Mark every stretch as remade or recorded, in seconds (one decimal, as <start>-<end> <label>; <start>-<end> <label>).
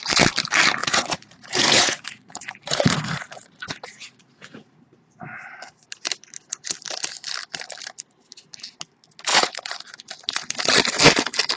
0.0-0.8 recorded; 0.8-4.8 remade; 4.8-9.3 recorded; 9.3-10.0 remade; 10.0-11.6 recorded